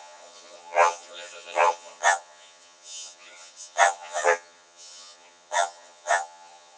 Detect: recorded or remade remade